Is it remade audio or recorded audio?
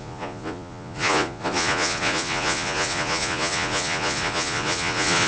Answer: remade